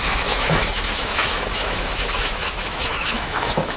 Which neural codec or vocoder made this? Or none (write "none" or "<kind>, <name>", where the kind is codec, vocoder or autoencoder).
autoencoder, DAC-VAE